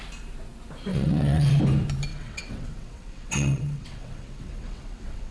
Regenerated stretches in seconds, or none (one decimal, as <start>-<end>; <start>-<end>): 0.9-1.6; 2.1-5.3